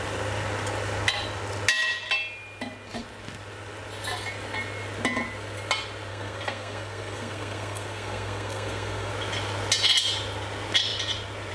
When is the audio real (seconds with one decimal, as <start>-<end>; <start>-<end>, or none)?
0.0-6.1; 9.1-11.5